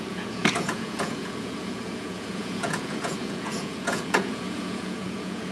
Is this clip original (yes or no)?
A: no